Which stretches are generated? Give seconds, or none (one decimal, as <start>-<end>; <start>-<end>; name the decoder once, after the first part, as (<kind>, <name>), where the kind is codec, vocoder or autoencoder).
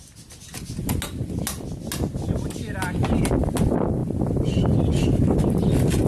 none